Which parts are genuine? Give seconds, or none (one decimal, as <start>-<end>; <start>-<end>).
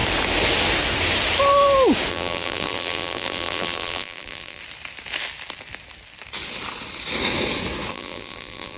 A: 0.0-2.1; 4.6-7.9